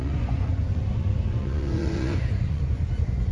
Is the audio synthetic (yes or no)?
yes